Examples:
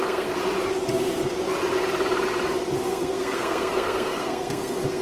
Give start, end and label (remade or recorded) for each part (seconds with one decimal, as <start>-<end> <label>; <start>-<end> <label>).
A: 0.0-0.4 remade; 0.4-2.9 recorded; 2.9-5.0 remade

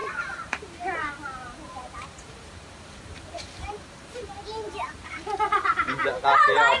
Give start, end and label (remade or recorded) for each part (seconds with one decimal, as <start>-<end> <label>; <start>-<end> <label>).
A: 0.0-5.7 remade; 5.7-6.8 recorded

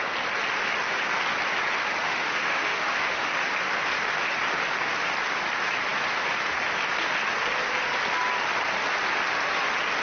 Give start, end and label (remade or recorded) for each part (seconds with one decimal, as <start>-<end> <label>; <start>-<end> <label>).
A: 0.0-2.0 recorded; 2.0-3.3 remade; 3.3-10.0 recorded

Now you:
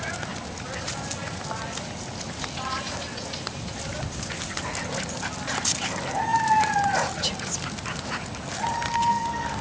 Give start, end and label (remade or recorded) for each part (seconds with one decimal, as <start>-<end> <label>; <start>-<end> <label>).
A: 0.0-8.9 recorded; 8.9-9.6 remade

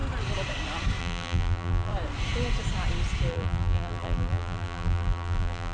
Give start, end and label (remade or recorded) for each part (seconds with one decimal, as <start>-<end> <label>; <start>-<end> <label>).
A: 0.0-1.0 recorded; 1.0-1.9 remade; 1.9-3.3 recorded; 3.3-5.7 remade

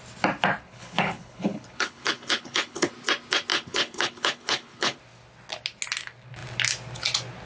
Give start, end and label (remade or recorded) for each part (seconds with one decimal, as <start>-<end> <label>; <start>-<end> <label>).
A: 0.0-0.7 recorded; 0.7-2.9 remade; 2.9-3.5 recorded; 3.5-5.0 remade; 5.0-7.5 recorded

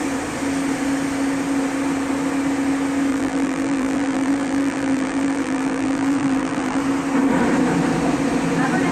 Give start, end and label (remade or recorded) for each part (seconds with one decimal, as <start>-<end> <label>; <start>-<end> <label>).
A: 0.0-3.1 recorded; 3.1-6.8 remade; 6.8-8.9 recorded